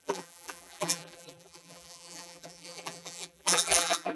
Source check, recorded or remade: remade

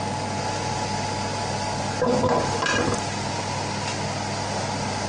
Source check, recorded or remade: recorded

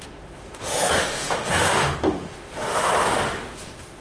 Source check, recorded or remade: remade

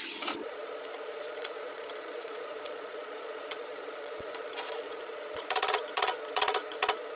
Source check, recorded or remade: remade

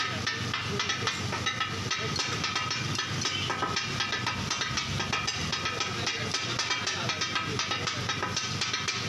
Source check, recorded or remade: recorded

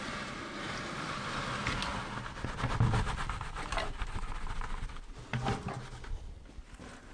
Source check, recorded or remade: recorded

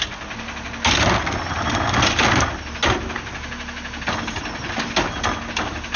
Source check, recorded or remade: recorded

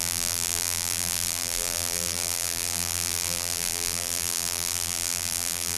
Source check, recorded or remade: remade